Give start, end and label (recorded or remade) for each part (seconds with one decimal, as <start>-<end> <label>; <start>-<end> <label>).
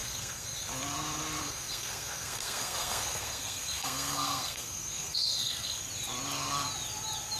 0.0-0.7 remade; 0.7-1.4 recorded; 1.4-5.8 remade; 5.8-7.4 recorded